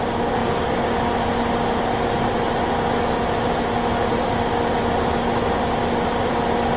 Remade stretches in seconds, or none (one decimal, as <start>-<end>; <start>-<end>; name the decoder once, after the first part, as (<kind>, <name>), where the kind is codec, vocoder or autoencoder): none

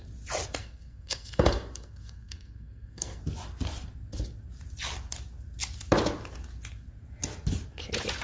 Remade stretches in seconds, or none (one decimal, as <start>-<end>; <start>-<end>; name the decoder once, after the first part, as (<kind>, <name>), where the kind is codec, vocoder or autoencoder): 0.6-3.2 (codec, SNAC)